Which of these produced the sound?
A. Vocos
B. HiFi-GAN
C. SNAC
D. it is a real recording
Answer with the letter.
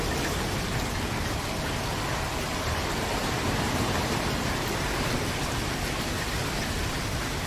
D